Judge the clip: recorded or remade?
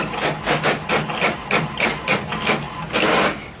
recorded